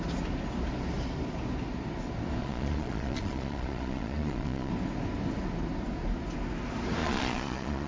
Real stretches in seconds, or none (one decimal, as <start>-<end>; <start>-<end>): 0.0-2.4; 4.7-7.0